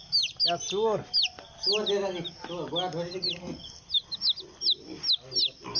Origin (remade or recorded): recorded